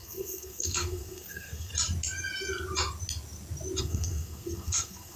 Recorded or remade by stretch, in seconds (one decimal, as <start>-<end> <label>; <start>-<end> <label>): 0.0-1.7 remade; 1.7-3.8 recorded; 3.8-5.2 remade